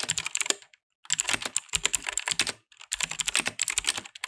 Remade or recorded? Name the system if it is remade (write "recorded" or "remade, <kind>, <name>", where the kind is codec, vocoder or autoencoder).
recorded